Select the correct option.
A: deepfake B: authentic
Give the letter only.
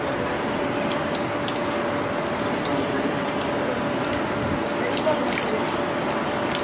B